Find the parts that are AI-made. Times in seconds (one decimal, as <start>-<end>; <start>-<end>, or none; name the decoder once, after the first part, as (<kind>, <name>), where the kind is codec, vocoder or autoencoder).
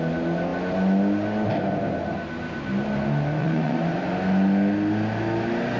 3.4-4.0 (vocoder, Vocos)